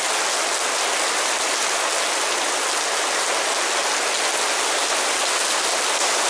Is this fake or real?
real